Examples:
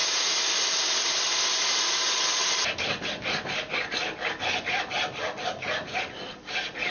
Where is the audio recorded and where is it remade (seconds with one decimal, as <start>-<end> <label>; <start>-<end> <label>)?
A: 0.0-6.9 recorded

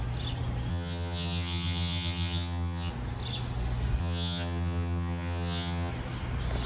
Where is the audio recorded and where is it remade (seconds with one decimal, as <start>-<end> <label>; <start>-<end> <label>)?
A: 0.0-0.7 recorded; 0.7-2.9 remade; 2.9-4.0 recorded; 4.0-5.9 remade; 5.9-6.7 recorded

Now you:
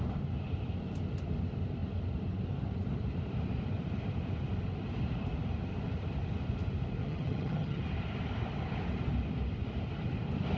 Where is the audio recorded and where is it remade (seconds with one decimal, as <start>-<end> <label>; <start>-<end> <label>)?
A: 0.0-7.0 recorded; 7.0-7.8 remade; 7.8-10.6 recorded

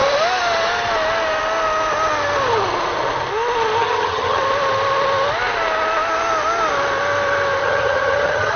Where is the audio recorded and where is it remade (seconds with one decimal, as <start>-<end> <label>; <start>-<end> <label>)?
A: 0.0-3.8 recorded; 3.8-4.4 remade; 4.4-7.6 recorded; 7.6-8.6 remade

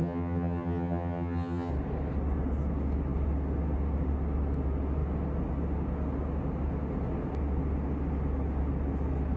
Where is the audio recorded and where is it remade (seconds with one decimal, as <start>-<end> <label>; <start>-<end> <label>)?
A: 0.0-1.7 remade; 1.7-9.4 recorded

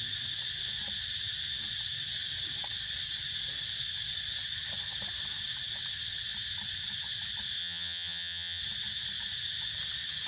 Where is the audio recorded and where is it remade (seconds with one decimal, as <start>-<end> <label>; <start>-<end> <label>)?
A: 0.0-7.6 recorded; 7.6-8.6 remade; 8.6-10.3 recorded

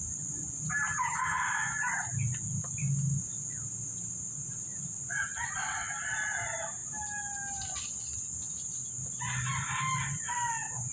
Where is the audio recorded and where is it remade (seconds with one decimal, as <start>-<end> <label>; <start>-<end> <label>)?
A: 0.0-0.9 recorded; 0.9-1.4 remade; 1.4-10.9 recorded

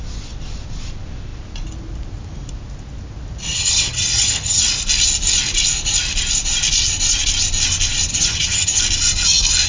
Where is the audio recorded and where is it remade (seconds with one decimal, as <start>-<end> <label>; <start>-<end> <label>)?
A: 0.0-3.5 recorded; 3.5-4.6 remade; 4.6-8.1 recorded; 8.1-8.8 remade; 8.8-9.7 recorded